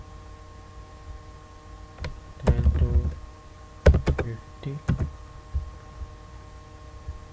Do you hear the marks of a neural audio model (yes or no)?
no